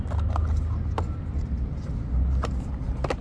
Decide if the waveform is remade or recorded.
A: recorded